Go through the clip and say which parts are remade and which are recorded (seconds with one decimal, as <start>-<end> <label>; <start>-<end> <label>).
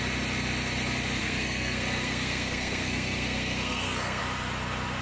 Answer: 0.0-1.2 recorded; 1.2-4.2 remade; 4.2-5.0 recorded